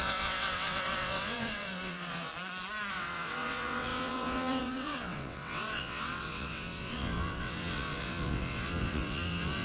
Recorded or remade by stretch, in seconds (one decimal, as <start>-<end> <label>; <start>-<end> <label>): 0.0-2.3 remade; 2.3-2.9 recorded; 2.9-9.6 remade